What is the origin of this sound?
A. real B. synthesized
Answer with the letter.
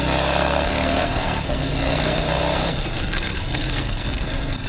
B